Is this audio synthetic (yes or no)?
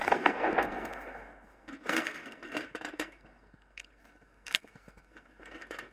yes